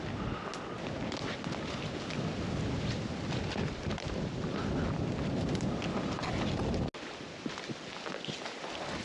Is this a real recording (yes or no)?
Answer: yes